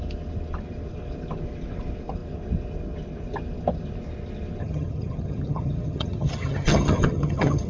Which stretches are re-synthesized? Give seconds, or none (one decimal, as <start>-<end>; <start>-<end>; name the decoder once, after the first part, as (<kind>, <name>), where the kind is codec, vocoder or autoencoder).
4.6-7.7 (vocoder, HiFi-GAN)